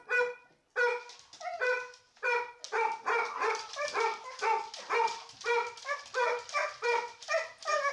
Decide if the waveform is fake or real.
real